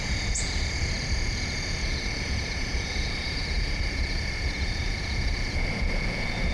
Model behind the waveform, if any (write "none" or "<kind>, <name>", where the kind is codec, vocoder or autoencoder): vocoder, Vocos